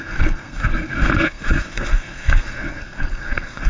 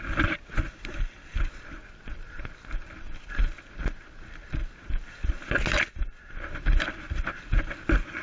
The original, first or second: second